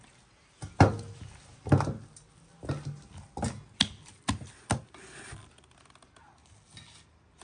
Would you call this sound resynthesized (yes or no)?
no